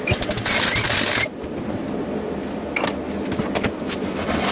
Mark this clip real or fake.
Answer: real